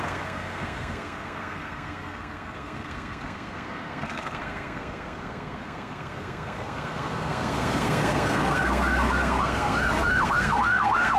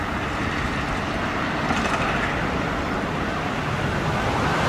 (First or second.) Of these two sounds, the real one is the second